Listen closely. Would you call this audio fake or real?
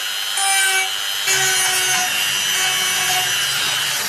real